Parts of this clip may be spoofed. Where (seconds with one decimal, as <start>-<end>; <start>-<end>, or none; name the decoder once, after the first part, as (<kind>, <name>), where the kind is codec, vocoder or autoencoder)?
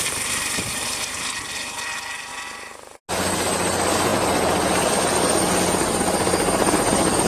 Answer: none